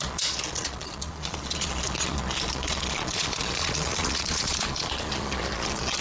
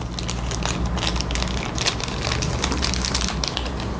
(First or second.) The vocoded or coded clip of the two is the first